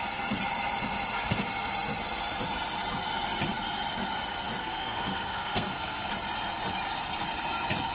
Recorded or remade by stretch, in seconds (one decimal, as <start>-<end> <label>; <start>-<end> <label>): 0.0-4.6 recorded; 4.6-6.1 remade; 6.1-7.9 recorded